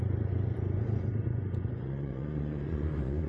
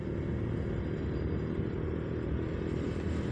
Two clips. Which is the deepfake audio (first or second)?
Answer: first